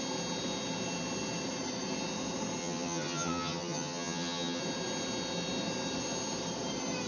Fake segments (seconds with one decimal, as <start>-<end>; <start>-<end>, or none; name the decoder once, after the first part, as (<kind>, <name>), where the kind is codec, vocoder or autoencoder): 2.6-4.6 (vocoder, HiFi-GAN)